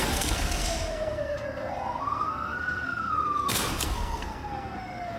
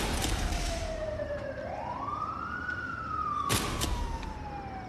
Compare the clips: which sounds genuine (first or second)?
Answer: second